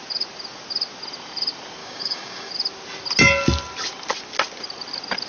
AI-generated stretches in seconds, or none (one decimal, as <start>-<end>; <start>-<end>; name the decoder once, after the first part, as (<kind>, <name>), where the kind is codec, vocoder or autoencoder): 1.8-2.5 (codec, DAC)